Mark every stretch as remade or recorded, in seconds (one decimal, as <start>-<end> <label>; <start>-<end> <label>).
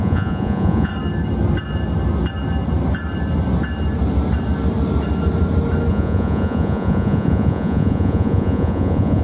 0.0-0.9 remade; 0.9-5.9 recorded; 5.9-9.2 remade